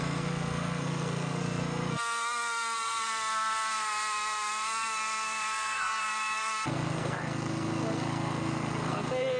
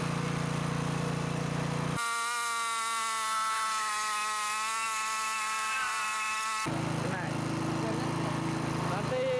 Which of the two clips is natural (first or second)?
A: second